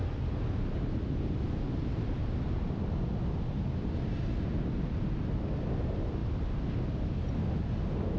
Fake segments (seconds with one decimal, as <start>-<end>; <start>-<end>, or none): none

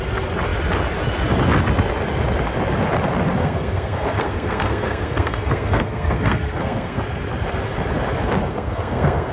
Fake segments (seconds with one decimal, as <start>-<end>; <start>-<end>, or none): 3.4-7.0; 8.5-9.3

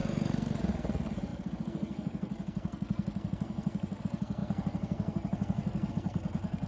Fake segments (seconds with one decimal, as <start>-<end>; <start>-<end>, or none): 0.0-6.7

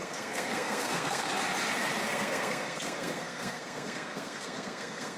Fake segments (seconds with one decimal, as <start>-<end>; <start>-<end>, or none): 0.0-1.3; 2.0-5.2

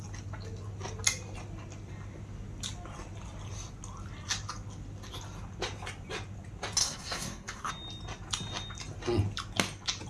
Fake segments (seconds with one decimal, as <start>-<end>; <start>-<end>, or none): 6.8-7.7